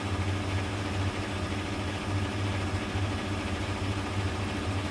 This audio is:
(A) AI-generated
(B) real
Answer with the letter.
B